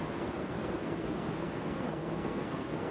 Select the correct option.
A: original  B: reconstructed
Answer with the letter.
B